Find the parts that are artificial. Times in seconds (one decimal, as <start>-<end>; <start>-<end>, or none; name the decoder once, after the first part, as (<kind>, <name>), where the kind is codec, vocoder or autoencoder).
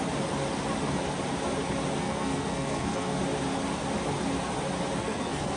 2.0-3.2 (codec, SNAC); 5.0-5.6